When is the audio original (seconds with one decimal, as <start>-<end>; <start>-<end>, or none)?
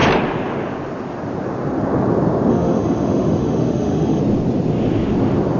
0.0-2.5; 4.2-5.6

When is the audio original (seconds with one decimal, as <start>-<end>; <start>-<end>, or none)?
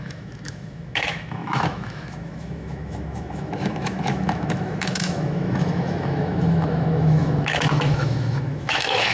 none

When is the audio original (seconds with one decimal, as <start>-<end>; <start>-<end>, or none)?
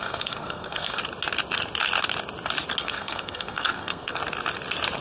1.0-2.8; 4.2-5.0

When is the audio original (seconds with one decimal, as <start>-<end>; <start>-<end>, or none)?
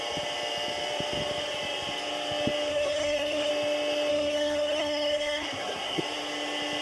0.0-2.7; 3.5-4.1; 6.0-6.8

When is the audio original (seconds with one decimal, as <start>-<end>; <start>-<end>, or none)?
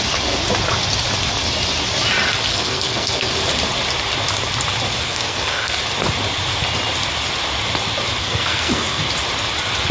0.0-2.5; 3.3-5.0; 5.8-8.2; 9.0-9.9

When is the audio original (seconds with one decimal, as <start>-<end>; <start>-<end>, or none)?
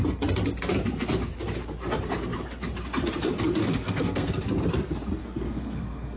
0.0-3.6; 4.4-5.2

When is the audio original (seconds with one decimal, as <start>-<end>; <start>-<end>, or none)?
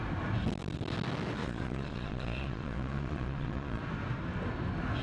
0.0-1.4; 3.8-5.0